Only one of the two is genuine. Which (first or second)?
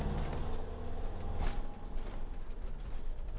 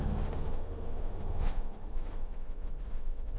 first